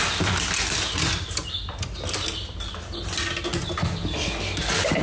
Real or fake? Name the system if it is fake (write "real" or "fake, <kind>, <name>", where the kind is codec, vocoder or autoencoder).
real